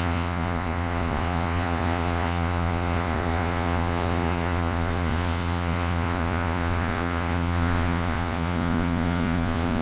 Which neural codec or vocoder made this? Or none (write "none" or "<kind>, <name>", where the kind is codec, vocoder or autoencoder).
vocoder, Vocos